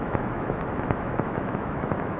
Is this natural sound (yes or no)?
no